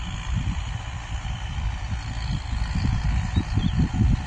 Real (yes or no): yes